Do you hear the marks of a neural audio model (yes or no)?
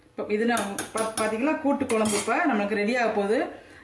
no